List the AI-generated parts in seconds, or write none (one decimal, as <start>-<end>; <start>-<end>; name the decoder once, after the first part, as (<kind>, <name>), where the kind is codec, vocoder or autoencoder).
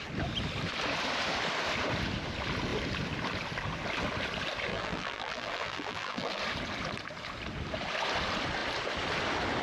4.7-6.4 (vocoder, BigVGAN v2)